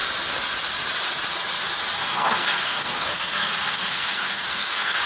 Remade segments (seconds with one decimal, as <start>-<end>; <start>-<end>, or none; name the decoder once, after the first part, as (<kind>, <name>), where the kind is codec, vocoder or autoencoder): 2.0-5.1 (codec, SNAC)